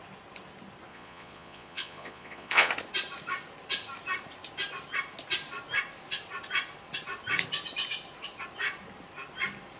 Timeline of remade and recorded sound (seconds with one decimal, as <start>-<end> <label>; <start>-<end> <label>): 0.0-0.9 recorded; 0.9-2.7 remade; 2.7-9.8 recorded